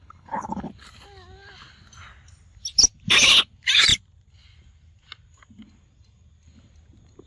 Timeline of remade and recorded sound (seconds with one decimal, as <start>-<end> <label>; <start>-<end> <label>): 0.0-0.7 remade; 0.7-7.3 recorded